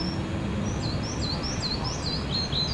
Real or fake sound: real